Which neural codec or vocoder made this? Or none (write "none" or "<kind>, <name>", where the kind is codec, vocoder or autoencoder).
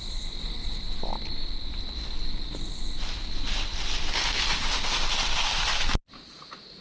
none